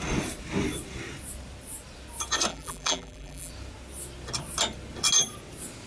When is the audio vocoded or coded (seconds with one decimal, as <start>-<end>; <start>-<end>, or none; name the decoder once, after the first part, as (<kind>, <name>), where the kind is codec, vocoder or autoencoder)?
2.5-3.5 (vocoder, BigVGAN v2)